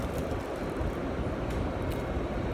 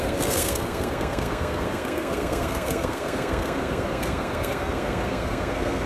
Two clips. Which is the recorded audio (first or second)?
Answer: first